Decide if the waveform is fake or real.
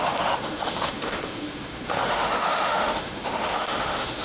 fake